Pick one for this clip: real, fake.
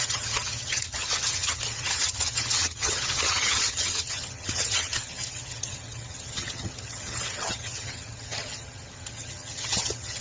fake